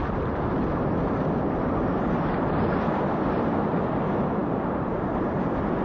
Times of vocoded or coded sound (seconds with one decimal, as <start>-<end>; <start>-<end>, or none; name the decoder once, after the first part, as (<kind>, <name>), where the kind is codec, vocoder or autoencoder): none